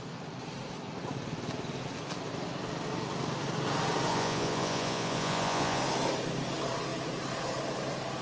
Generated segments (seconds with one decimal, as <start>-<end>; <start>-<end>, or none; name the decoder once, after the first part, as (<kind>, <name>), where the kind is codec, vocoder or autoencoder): 4.1-5.8 (vocoder, Vocos)